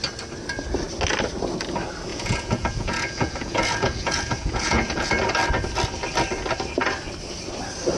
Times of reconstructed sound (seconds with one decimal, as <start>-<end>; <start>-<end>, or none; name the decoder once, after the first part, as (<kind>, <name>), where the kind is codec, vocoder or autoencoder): 2.1-5.1 (vocoder, Vocos)